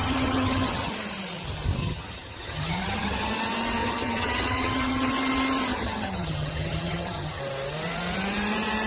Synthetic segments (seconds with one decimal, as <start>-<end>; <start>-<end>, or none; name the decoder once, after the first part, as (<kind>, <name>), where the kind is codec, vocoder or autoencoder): 0.0-0.9 (vocoder, HiFi-GAN); 1.8-3.3; 3.8-5.1; 5.7-7.4